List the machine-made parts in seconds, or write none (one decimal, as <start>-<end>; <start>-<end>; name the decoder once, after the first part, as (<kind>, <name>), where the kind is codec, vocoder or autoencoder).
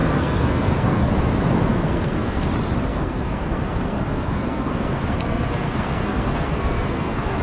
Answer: 0.0-1.1 (codec, SNAC); 1.7-2.4; 2.9-7.4